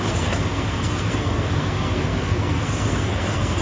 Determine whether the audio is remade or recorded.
remade